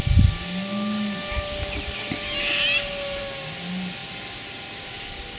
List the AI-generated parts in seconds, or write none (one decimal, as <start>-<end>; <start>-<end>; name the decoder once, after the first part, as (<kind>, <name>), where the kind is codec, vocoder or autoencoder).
none